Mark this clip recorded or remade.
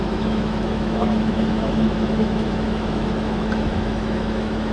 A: remade